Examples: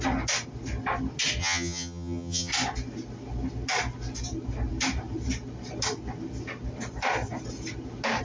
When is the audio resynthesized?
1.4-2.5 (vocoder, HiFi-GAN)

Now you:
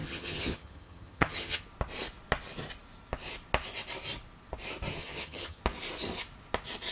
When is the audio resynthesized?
0.0-1.6 (vocoder, HiFi-GAN); 4.9-5.6

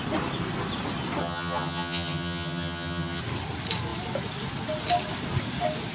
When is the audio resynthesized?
1.2-3.2 (vocoder, HiFi-GAN)

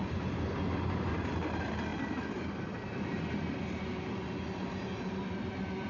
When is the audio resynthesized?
none

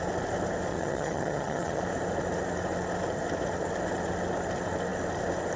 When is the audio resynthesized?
0.7-1.8 (vocoder, HiFi-GAN)